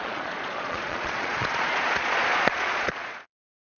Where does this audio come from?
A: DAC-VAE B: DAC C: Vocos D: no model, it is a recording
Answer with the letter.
C